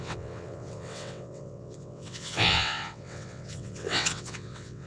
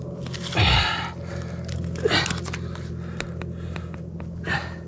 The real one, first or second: second